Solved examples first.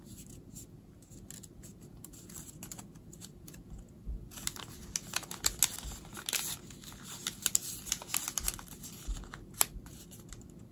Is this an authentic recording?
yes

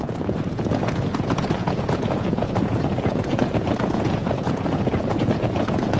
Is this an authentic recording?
no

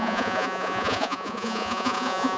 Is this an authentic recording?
no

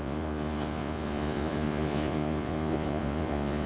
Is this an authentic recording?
no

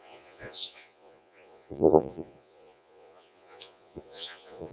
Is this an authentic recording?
no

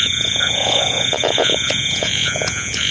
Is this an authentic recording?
no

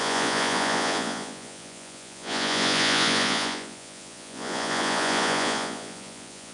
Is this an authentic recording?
no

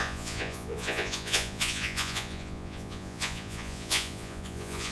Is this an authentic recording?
no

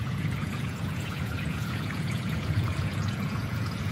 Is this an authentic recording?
no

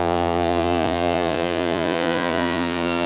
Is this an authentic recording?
no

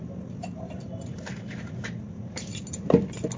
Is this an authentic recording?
yes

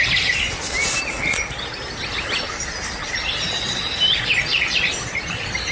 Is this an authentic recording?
yes